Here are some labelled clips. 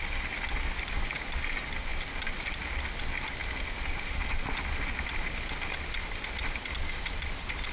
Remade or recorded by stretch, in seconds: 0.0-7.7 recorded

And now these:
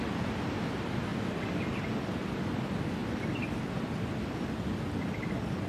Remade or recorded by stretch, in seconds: 0.0-5.7 recorded

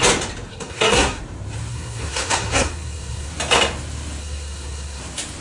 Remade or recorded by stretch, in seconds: 0.0-0.5 recorded; 0.5-1.2 remade; 1.2-1.7 recorded; 1.7-3.3 remade; 3.3-4.2 recorded; 4.2-5.0 remade; 5.0-5.4 recorded

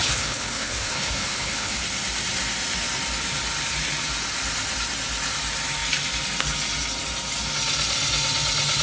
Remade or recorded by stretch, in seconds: 0.0-1.8 remade; 1.8-8.8 recorded

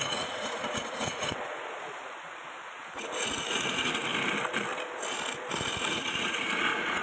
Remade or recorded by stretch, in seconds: 0.0-4.1 remade; 4.1-5.9 recorded; 5.9-7.0 remade

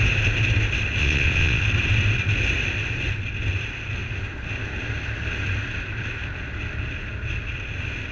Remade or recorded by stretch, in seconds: 0.0-1.0 recorded; 1.0-1.6 remade; 1.6-8.1 recorded